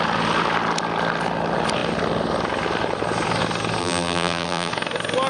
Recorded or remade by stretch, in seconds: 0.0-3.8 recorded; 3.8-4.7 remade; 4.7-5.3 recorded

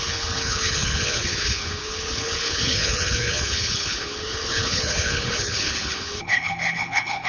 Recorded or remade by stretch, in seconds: 0.0-7.3 remade

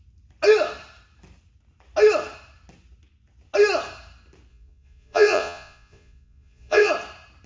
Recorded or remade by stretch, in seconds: 0.0-4.5 recorded; 4.5-6.9 remade; 6.9-7.5 recorded

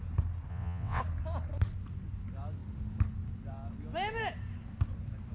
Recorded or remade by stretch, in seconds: 0.0-0.5 recorded; 0.5-1.0 remade; 1.0-5.3 recorded

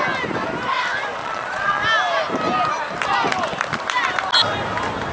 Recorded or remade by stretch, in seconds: 0.0-1.2 recorded; 1.2-1.8 remade; 1.8-5.1 recorded

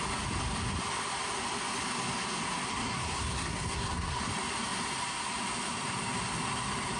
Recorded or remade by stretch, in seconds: 0.0-2.7 recorded; 2.7-4.2 remade; 4.2-7.0 recorded

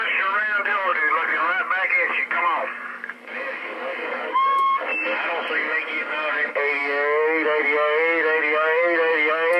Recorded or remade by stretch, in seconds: 0.0-4.9 remade; 4.9-5.5 recorded; 5.5-9.6 remade